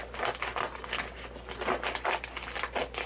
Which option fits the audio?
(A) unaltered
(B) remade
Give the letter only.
A